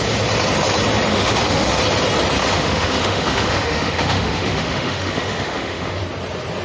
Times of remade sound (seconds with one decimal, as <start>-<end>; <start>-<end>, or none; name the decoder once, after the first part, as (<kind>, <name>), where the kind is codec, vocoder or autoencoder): 1.1-1.8 (autoencoder, DAC-VAE); 2.4-6.0